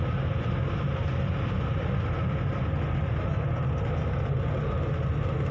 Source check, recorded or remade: recorded